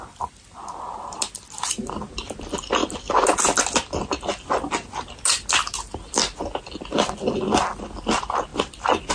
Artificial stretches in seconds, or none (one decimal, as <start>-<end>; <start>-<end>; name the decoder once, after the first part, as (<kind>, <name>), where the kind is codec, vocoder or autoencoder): none